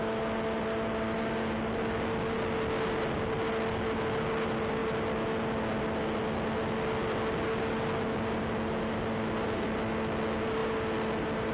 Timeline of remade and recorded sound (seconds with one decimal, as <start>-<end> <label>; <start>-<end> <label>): 0.0-11.5 recorded